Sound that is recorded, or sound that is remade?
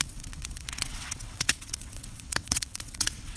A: remade